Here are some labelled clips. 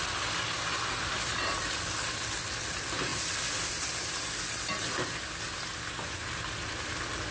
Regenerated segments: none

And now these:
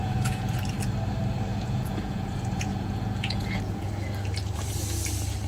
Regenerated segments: 0.0-0.6 (vocoder, Vocos); 1.5-3.9

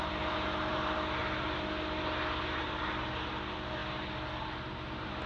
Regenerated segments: none

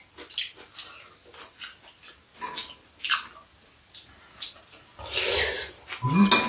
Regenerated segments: none

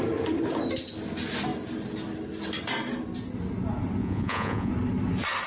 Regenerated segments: 4.0-4.7 (vocoder, Vocos)

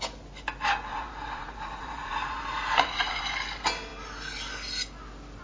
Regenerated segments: 0.9-3.2 (vocoder, Vocos)

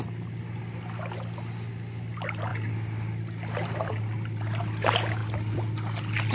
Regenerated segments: none